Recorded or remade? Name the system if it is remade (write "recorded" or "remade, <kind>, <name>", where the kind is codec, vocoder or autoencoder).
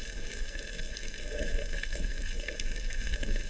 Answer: remade, codec, SNAC